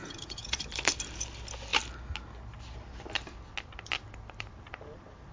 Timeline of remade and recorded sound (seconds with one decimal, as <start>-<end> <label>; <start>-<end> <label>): 0.0-0.6 remade; 0.6-5.3 recorded